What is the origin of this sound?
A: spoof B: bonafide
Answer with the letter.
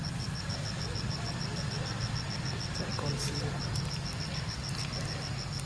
B